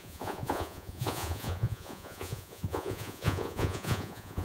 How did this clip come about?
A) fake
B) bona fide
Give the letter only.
A